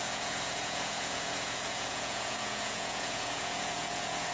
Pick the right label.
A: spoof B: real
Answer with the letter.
A